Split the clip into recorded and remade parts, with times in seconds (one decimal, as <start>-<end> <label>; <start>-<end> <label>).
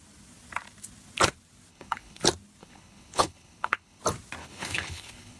0.0-1.7 recorded; 1.7-2.2 remade; 2.2-2.6 recorded; 2.6-4.0 remade; 4.0-4.4 recorded; 4.4-5.4 remade